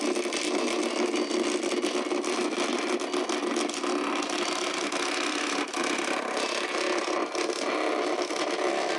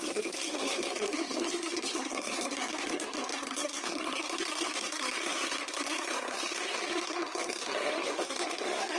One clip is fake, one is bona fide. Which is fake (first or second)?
second